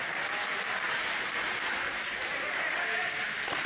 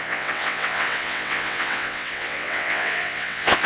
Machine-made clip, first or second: second